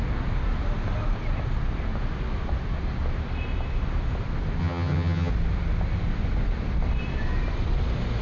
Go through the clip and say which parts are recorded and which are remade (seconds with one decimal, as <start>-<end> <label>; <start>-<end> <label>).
0.0-4.6 recorded; 4.6-5.3 remade; 5.3-8.2 recorded